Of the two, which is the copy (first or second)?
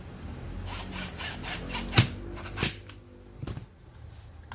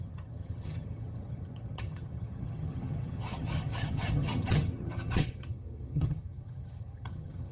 second